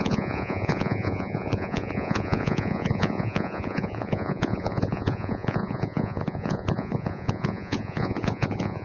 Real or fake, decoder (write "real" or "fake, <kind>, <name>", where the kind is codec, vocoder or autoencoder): fake, vocoder, Vocos